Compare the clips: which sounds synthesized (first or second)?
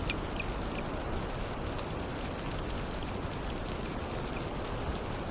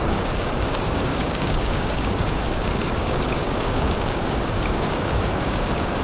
second